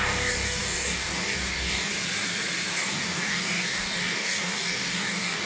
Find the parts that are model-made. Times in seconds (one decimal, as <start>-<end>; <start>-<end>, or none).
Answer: 0.0-1.9; 2.7-5.5